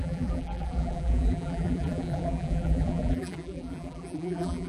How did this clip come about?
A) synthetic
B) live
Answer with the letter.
A